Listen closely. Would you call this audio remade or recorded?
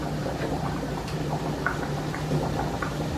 remade